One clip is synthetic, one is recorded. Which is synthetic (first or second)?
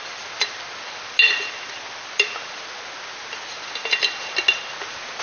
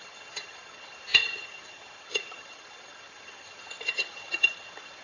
second